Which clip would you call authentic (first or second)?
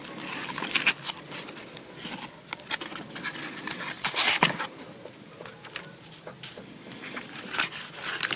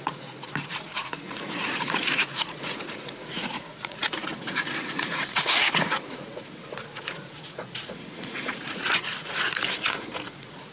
first